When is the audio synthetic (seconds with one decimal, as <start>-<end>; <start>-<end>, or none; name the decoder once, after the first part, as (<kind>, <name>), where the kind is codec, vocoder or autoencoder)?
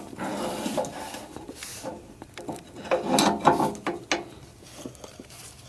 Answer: none